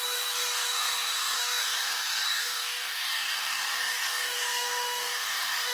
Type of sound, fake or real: fake